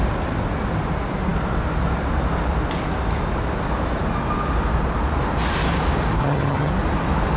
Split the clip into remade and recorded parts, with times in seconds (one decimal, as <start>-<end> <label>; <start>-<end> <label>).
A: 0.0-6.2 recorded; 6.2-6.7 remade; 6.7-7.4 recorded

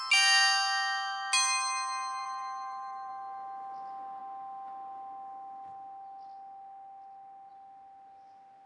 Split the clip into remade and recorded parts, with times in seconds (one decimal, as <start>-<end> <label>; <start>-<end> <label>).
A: 0.0-2.2 recorded; 2.2-3.1 remade; 3.1-8.7 recorded

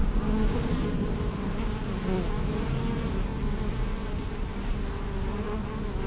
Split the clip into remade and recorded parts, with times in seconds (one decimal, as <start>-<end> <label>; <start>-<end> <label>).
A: 0.0-0.7 remade; 0.7-6.1 recorded

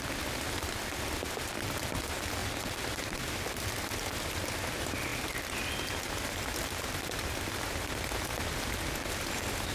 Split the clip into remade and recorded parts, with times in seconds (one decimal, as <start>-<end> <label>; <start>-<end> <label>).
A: 0.0-9.7 recorded

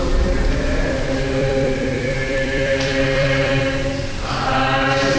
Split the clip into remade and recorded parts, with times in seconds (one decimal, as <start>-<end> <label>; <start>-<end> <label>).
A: 0.0-1.4 recorded; 1.4-3.6 remade; 3.6-5.2 recorded

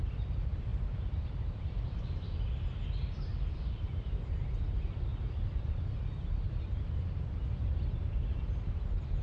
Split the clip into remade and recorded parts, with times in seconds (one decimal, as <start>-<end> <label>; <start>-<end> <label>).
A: 0.0-9.2 recorded

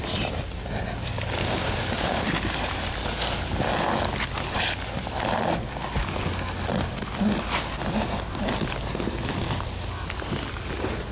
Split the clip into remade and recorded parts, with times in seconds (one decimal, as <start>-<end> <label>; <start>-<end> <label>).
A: 0.0-1.4 recorded; 1.4-2.3 remade; 2.3-11.1 recorded